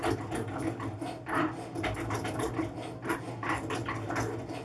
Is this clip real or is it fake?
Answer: real